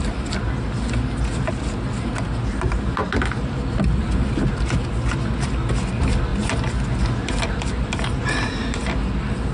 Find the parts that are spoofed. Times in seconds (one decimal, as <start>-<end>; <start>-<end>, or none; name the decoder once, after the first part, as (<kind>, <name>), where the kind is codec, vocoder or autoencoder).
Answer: none